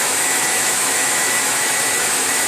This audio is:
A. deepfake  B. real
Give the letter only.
A